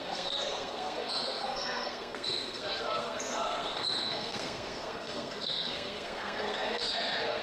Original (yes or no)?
no